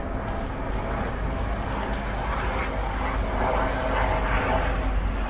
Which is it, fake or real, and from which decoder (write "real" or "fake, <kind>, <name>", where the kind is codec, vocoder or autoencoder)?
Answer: real